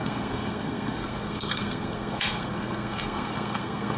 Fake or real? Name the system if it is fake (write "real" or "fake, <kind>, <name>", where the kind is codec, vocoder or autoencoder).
fake, codec, SNAC